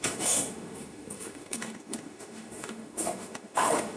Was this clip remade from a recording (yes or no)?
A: yes